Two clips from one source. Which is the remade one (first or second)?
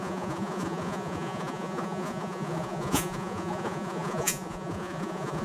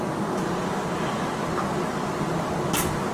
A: first